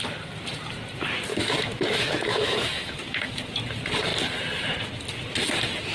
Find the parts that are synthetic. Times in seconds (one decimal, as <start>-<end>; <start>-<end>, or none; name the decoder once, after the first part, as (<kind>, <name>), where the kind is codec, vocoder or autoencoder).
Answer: 1.3-3.3 (autoencoder, DAC-VAE)